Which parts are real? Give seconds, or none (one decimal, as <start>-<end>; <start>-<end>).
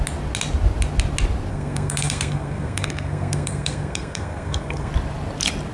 0.0-1.5; 4.9-5.7